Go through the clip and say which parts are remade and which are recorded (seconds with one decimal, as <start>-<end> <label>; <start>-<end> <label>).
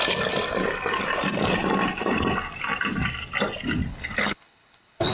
0.0-3.9 recorded; 3.9-5.1 remade